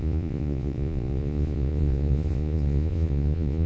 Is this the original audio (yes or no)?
no